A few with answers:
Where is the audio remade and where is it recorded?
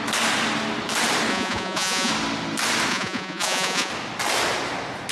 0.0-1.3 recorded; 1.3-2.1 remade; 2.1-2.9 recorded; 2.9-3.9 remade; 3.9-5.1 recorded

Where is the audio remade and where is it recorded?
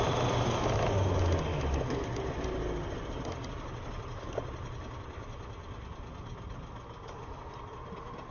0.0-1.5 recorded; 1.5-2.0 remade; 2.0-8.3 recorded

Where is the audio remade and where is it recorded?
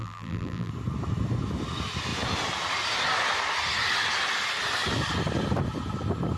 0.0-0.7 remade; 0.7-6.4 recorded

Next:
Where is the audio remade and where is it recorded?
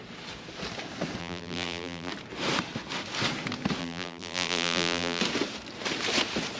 0.0-1.2 recorded; 1.2-2.1 remade; 2.1-3.8 recorded; 3.8-5.2 remade; 5.2-6.6 recorded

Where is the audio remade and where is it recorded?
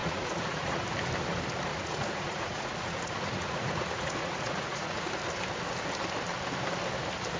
0.0-0.8 remade; 0.8-1.7 recorded; 1.7-5.1 remade; 5.1-7.4 recorded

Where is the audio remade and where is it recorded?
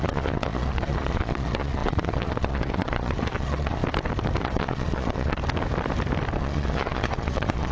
0.0-3.8 remade; 3.8-4.4 recorded; 4.4-5.4 remade; 5.4-6.4 recorded; 6.4-7.7 remade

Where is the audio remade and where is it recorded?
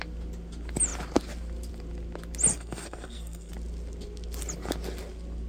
0.0-2.5 recorded; 2.5-3.5 remade; 3.5-5.5 recorded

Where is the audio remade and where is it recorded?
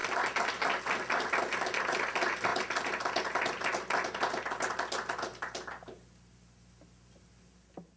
0.0-8.0 recorded